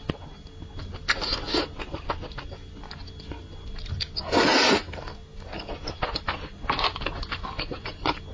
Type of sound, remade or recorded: recorded